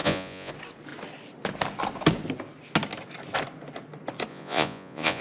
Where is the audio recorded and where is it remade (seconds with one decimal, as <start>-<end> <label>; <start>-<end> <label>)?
0.0-0.5 remade; 0.5-4.3 recorded; 4.3-5.2 remade